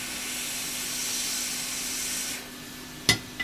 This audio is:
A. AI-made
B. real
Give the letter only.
B